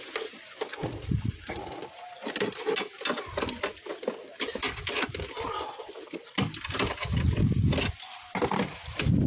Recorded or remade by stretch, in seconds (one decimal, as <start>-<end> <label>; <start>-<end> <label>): 0.0-9.3 recorded